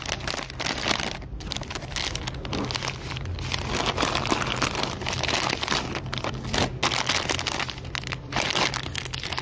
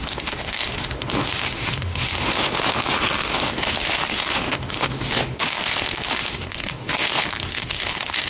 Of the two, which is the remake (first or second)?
second